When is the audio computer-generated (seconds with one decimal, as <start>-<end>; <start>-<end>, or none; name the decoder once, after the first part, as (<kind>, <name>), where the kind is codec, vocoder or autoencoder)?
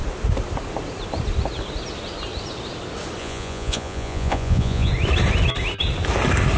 3.2-4.9 (vocoder, Vocos)